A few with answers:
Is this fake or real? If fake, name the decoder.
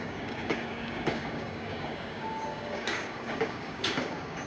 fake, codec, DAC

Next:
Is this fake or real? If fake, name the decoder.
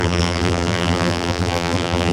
fake, vocoder, BigVGAN v2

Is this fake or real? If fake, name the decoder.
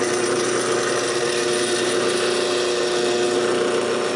real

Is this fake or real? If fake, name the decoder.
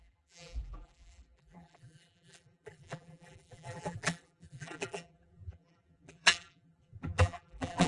fake, vocoder, BigVGAN v2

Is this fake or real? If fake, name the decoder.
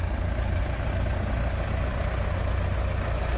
real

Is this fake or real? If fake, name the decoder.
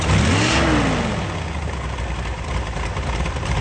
real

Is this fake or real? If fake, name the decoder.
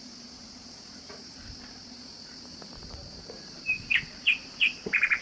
fake, vocoder, BigVGAN v2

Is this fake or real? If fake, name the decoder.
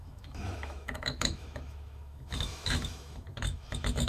fake, autoencoder, DAC-VAE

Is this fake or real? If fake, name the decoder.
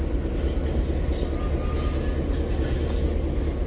real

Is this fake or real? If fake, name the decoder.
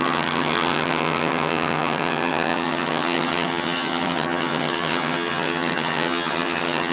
fake, vocoder, HiFi-GAN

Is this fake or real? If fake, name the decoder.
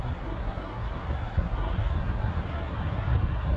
fake, codec, SNAC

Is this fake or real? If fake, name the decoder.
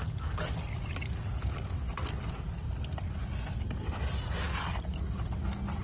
real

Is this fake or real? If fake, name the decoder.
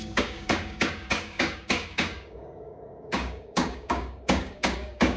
fake, codec, DAC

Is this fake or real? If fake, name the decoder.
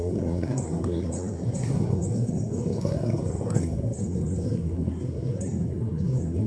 fake, codec, SNAC